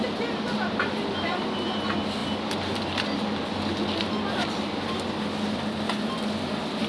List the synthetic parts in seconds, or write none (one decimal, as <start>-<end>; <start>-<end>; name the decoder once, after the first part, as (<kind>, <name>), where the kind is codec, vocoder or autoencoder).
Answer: none